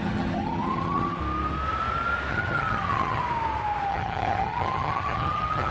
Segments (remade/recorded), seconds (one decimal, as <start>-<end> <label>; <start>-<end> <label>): 0.0-1.2 remade; 1.2-2.3 recorded; 2.3-3.2 remade; 3.2-3.9 recorded; 3.9-5.7 remade